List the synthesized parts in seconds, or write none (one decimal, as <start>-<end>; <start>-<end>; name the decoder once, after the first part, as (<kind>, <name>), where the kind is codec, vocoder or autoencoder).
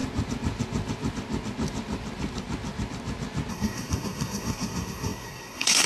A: 3.5-5.9 (codec, SNAC)